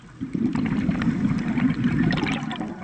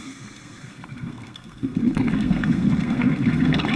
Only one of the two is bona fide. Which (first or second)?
first